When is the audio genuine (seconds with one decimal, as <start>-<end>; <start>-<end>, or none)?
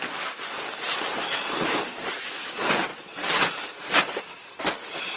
0.0-5.2